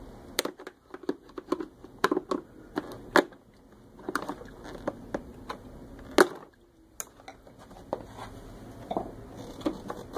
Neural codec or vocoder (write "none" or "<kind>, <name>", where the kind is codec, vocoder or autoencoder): none